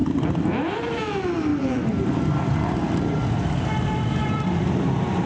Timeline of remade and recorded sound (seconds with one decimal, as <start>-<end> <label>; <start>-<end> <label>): 0.0-0.8 remade; 0.8-1.5 recorded; 1.5-4.7 remade; 4.7-5.3 recorded